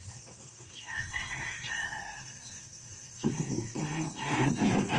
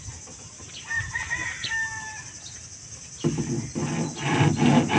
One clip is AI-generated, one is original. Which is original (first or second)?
second